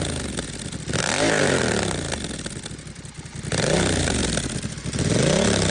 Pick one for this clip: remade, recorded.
recorded